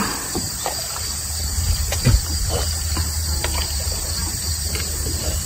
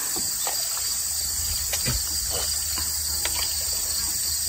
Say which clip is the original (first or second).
second